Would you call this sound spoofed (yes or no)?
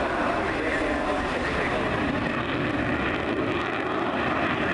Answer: no